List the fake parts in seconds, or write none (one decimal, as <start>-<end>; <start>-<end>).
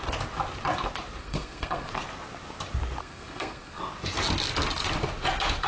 1.2-1.9; 3.0-3.8